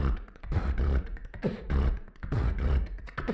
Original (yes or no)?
no